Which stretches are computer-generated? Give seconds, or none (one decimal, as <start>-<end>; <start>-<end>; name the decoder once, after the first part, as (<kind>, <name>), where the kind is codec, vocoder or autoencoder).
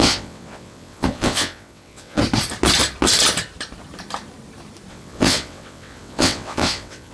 0.0-2.2 (vocoder, WaveNeXt); 4.9-7.1